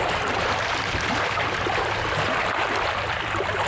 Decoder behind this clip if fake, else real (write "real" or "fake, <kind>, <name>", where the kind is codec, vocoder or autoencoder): fake, vocoder, BigVGAN v2